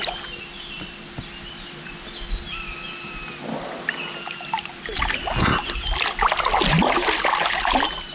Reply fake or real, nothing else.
real